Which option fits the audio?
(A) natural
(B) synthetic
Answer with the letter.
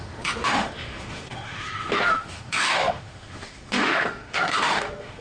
B